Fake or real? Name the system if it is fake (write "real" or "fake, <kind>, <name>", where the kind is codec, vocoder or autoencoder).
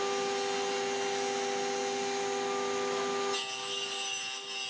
real